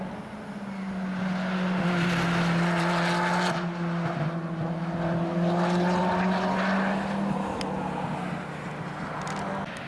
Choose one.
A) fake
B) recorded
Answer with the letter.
B